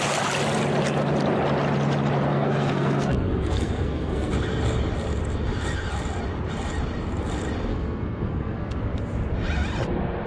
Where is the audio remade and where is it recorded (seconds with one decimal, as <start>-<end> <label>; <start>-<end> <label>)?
0.0-2.3 recorded; 2.3-4.3 remade; 4.3-7.7 recorded; 7.7-8.8 remade; 8.8-10.3 recorded